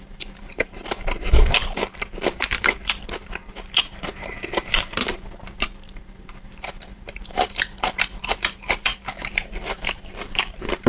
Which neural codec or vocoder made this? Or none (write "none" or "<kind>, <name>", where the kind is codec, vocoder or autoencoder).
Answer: vocoder, BigVGAN v2